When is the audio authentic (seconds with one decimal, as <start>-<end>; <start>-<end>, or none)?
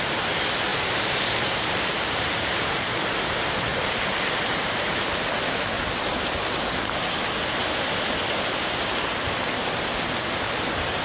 0.0-0.7; 2.8-3.7; 4.9-11.0